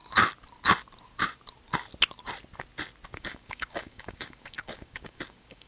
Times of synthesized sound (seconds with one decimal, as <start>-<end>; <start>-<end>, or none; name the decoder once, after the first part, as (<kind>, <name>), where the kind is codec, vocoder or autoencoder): 3.2-5.7 (codec, DAC)